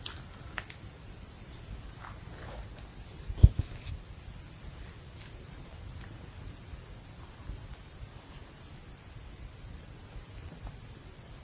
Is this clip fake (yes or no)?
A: no